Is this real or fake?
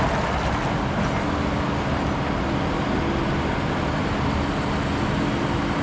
real